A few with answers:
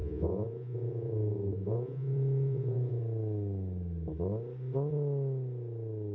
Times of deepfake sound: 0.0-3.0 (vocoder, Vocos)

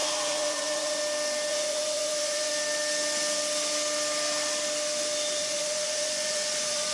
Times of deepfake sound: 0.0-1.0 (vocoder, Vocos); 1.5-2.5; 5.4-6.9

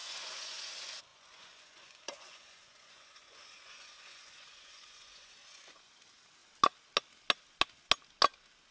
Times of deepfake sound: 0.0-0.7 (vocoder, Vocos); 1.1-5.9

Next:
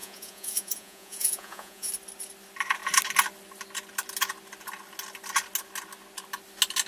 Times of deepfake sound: 0.0-1.9 (vocoder, Vocos)

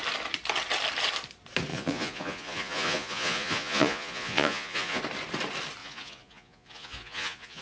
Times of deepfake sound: 1.7-5.0 (vocoder, Vocos); 5.8-7.6

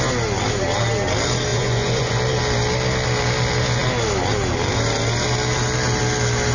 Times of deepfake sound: 1.5-2.2 (vocoder, Vocos)